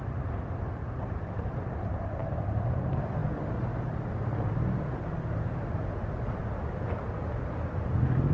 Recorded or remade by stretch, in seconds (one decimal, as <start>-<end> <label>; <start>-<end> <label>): 0.0-8.3 recorded